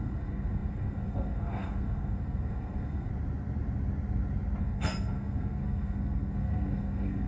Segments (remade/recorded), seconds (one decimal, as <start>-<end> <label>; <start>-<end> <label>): 0.0-3.1 remade; 3.1-4.6 recorded; 4.6-7.3 remade